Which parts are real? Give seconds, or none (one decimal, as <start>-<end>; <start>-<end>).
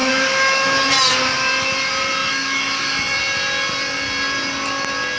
0.9-2.2; 3.2-5.2